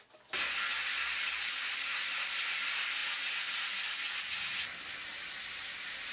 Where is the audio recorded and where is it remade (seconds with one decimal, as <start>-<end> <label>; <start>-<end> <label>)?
0.0-6.1 recorded